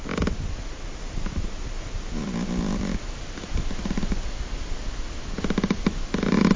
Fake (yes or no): no